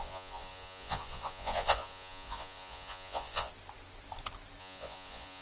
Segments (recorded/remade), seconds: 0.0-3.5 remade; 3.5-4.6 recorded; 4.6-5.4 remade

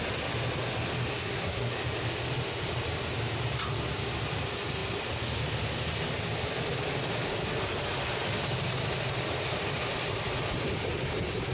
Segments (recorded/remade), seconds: 0.0-1.1 recorded; 1.1-1.7 remade; 1.7-11.5 recorded

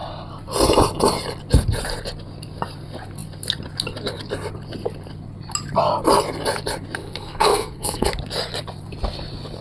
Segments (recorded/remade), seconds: 0.0-7.0 recorded; 7.0-8.1 remade; 8.1-9.6 recorded

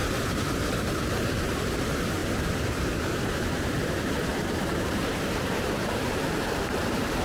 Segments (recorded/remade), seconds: 0.0-1.0 recorded; 1.0-2.2 remade; 2.2-3.9 recorded; 3.9-7.2 remade

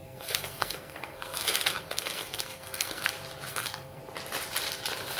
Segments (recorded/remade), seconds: 0.0-3.1 remade; 3.1-3.5 recorded; 3.5-4.0 remade; 4.0-5.2 recorded

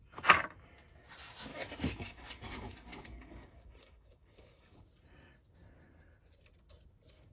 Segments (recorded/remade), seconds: 0.0-1.5 recorded; 1.5-4.8 remade; 4.8-7.3 recorded

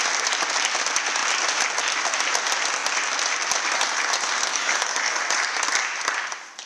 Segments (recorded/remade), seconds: 0.0-4.5 recorded; 4.5-5.2 remade; 5.2-6.7 recorded

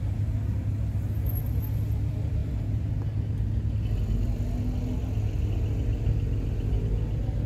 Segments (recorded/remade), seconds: 0.0-7.5 recorded